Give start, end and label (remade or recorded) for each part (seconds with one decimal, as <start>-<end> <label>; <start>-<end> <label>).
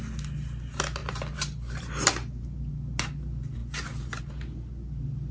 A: 0.0-5.3 recorded